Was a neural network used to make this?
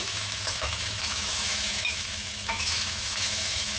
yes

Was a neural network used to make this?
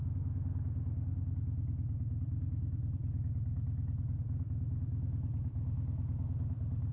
no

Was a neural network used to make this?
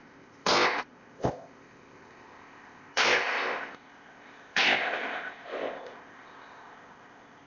yes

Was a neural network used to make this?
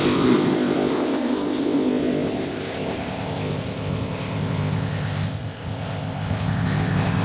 yes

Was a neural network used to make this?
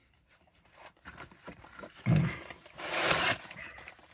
yes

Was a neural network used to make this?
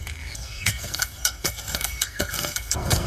yes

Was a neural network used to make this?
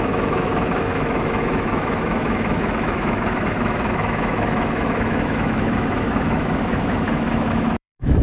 yes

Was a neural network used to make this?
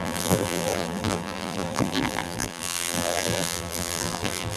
yes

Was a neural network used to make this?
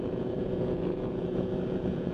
yes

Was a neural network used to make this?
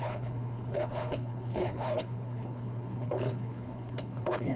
yes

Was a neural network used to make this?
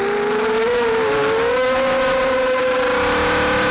no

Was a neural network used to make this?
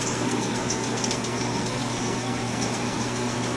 yes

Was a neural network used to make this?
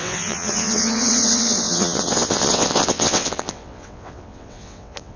yes